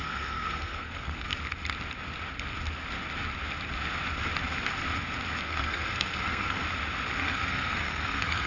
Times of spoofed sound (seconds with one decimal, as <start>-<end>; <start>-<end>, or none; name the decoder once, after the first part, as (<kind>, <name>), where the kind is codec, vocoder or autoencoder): 0.0-1.3 (codec, SNAC); 5.4-6.6; 7.2-8.5